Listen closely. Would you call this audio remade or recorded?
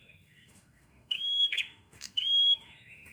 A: remade